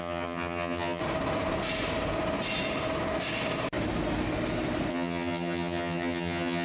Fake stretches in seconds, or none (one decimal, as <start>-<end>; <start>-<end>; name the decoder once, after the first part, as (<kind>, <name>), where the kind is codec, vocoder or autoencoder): 0.0-1.0 (vocoder, HiFi-GAN); 4.9-6.6